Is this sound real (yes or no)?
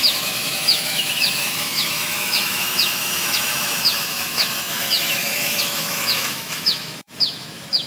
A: no